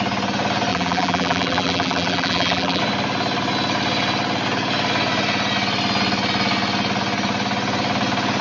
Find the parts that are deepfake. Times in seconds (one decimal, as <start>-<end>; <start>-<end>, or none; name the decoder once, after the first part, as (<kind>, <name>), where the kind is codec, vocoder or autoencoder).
0.7-2.8 (vocoder, BigVGAN v2)